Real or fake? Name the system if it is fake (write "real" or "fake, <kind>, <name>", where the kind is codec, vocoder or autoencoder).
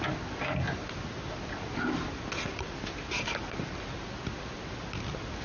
real